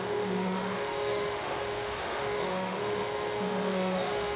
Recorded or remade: remade